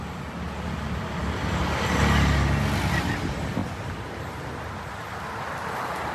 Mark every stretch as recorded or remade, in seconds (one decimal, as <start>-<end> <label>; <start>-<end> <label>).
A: 0.0-6.1 recorded